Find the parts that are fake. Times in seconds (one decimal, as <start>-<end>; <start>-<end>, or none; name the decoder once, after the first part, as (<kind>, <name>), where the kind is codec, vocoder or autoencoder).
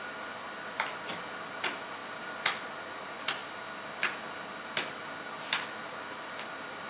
none